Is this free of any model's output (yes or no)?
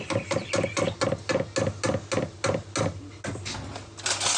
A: yes